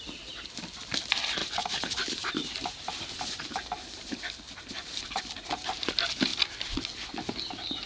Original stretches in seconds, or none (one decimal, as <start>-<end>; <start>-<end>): 0.0-1.4; 5.2-7.9